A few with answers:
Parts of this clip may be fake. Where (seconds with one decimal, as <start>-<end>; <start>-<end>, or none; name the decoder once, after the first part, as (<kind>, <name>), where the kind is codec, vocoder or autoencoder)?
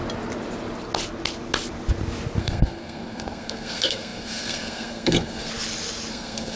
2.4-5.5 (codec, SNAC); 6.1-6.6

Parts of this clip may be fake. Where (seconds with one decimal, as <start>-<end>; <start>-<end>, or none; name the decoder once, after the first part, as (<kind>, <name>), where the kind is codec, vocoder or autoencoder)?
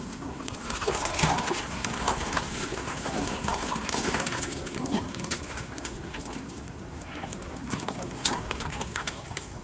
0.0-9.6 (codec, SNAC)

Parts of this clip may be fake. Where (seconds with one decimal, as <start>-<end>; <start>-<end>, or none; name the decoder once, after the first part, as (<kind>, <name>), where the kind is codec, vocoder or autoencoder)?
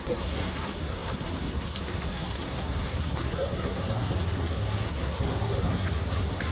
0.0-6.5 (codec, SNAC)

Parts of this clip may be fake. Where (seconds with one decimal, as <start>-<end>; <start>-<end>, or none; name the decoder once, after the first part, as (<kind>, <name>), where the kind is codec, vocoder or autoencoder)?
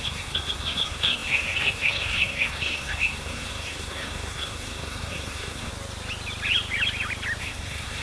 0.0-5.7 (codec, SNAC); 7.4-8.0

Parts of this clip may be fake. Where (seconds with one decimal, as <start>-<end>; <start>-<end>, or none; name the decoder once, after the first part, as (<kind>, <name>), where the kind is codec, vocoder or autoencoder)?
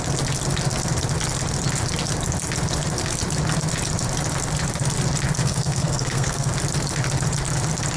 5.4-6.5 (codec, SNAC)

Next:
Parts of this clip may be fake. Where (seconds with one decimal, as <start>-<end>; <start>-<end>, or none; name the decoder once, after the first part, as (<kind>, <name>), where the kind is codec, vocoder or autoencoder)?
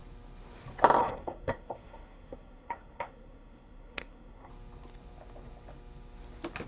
1.0-4.5 (codec, SNAC)